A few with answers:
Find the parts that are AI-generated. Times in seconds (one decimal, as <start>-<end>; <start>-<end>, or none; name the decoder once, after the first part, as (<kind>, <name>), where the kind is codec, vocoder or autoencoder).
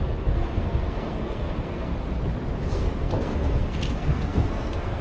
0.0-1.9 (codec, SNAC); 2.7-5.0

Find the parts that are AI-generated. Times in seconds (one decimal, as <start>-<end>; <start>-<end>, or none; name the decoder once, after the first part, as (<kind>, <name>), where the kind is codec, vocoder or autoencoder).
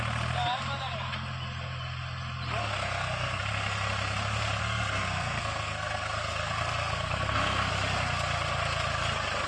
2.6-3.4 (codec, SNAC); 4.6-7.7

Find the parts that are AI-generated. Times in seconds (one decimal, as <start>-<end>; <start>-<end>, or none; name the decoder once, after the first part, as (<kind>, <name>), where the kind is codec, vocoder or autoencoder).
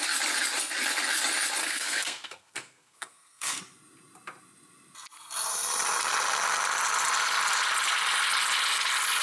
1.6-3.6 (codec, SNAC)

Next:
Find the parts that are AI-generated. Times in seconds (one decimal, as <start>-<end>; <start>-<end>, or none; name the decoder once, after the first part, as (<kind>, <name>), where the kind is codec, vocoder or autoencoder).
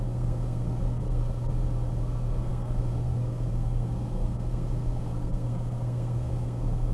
0.0-1.5 (codec, SNAC); 2.0-6.9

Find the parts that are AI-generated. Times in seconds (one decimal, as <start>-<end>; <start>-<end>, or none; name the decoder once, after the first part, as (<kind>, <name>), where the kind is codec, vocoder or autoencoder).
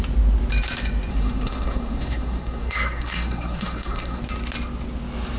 1.1-4.2 (codec, SNAC)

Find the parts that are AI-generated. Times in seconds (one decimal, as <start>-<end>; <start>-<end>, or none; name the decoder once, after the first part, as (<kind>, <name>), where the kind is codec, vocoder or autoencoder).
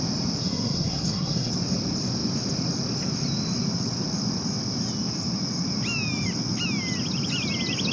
0.4-1.5 (codec, SNAC)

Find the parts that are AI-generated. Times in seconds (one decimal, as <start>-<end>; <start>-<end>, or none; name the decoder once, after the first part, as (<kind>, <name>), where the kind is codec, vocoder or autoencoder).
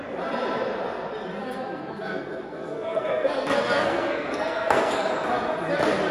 1.4-5.1 (codec, SNAC)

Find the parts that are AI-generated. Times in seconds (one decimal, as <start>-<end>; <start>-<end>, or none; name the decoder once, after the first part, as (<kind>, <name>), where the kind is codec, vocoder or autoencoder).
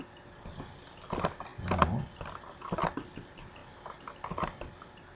none